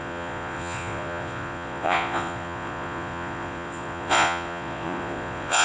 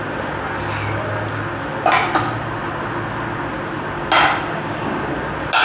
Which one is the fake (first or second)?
first